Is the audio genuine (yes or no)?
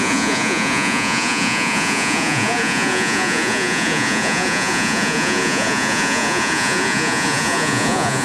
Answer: no